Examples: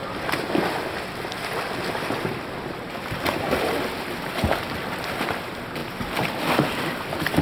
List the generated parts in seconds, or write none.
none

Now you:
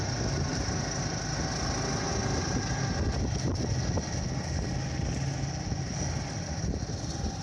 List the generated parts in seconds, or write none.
none

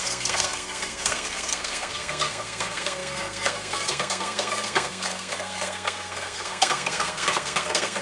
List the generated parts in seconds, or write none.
0.0-8.0

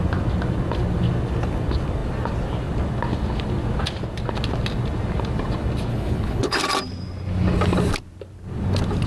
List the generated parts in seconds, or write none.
5.9-6.6

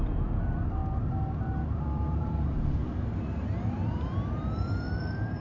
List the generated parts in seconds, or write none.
0.0-0.8; 1.6-2.8; 3.7-5.4